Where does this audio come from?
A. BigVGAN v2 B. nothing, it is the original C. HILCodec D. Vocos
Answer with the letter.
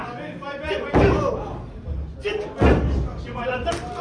B